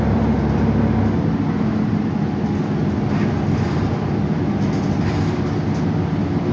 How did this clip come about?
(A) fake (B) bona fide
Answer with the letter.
B